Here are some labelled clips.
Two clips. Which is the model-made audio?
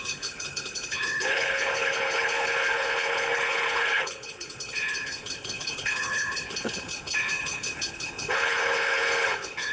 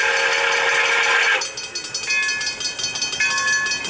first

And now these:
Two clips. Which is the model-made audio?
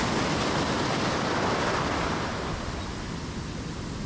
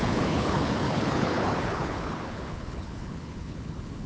second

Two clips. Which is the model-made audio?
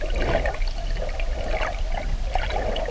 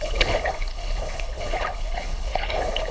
second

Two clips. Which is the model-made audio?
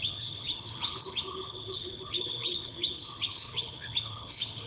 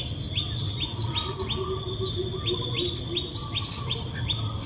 first